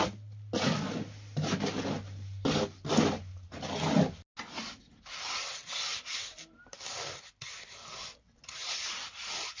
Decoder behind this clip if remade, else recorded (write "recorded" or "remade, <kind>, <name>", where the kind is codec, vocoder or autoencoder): recorded